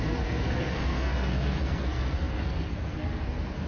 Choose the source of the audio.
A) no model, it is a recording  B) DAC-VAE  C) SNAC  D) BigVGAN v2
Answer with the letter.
C